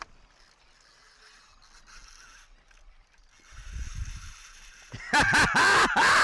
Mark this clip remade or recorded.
recorded